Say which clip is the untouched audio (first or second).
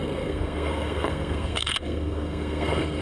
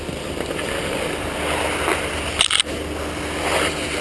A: second